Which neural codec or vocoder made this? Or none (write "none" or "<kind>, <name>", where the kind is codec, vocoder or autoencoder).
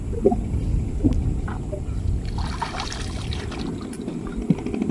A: none